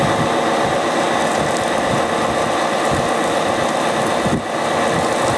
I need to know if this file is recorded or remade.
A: recorded